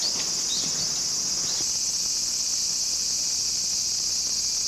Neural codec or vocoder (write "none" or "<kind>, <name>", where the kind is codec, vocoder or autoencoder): none